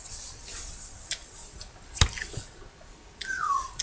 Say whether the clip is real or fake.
real